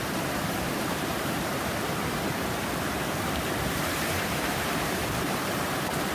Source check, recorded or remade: remade